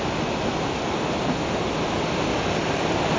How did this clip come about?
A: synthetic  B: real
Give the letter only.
B